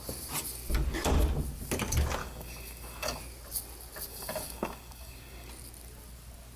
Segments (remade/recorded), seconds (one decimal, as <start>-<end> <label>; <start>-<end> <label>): 0.0-2.2 recorded; 2.2-3.2 remade; 3.2-4.1 recorded; 4.1-5.5 remade; 5.5-6.6 recorded